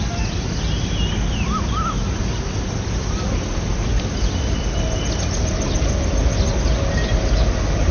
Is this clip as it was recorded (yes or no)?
yes